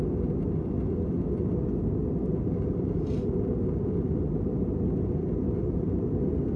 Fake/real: real